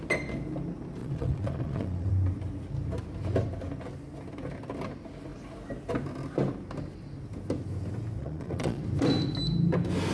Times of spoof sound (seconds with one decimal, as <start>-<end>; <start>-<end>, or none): 1.0-2.1; 8.2-8.8